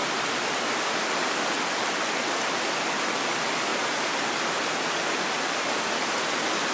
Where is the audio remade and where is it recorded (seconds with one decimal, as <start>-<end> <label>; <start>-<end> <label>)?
0.0-6.7 recorded